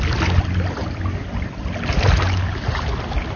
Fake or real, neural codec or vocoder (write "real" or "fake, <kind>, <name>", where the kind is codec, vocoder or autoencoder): real